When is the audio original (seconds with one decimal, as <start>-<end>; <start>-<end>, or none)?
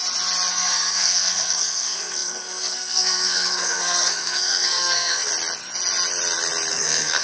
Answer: 0.0-0.5; 5.3-6.7